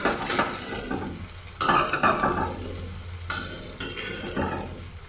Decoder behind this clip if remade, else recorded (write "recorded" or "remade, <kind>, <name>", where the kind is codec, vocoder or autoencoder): recorded